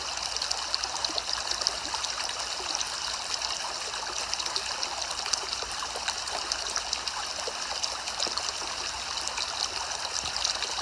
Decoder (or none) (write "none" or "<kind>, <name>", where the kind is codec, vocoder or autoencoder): none